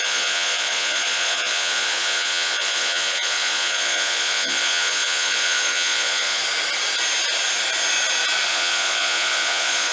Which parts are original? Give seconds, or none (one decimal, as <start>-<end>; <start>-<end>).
6.4-8.5